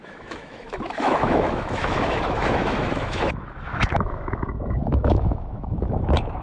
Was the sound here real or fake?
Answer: fake